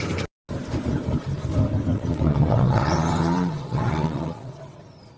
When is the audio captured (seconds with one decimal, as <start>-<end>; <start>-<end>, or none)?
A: 0.0-1.9; 4.8-5.2